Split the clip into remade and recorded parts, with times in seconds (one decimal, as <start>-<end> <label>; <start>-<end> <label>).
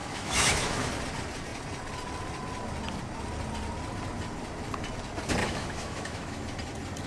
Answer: 0.0-0.9 remade; 0.9-5.4 recorded; 5.4-6.4 remade; 6.4-7.1 recorded